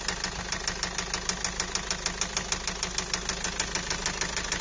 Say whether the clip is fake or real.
real